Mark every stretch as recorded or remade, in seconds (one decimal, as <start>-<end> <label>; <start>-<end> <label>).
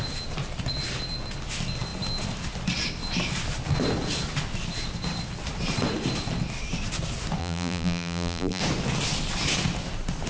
0.0-7.4 recorded; 7.4-8.6 remade; 8.6-10.3 recorded